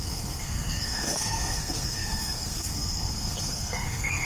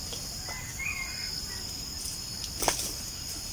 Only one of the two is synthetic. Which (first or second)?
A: first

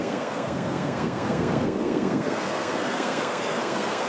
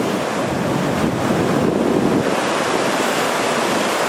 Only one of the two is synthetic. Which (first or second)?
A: first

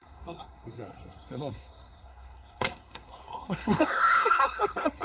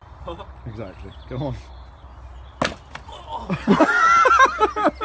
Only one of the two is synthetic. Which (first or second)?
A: first